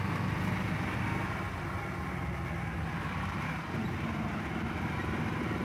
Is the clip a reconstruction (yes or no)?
no